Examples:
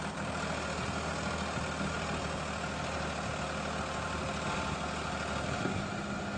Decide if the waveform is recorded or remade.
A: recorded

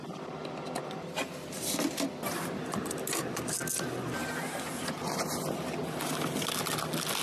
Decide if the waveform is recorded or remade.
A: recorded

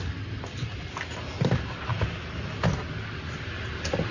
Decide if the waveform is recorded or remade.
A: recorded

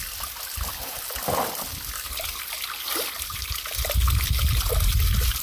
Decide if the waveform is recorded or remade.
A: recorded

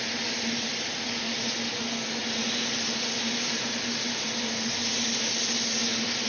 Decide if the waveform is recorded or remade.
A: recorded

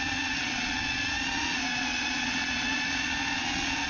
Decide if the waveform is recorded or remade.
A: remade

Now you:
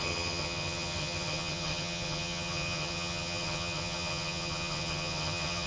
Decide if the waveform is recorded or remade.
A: remade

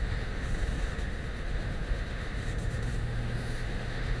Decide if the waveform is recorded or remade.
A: remade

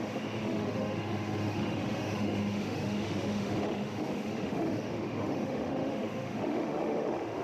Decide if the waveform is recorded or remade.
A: remade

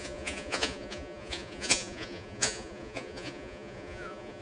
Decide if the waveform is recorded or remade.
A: remade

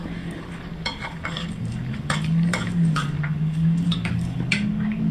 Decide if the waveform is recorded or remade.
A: remade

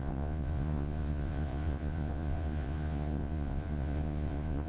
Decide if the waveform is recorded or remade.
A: remade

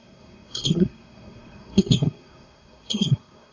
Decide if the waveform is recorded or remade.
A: remade